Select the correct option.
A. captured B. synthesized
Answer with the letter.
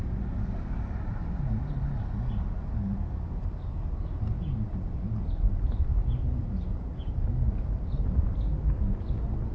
A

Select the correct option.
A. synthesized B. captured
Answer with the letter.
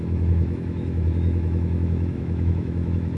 A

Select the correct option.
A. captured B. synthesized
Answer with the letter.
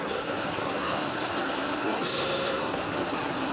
B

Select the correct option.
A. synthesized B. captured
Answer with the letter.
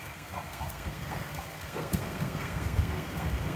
A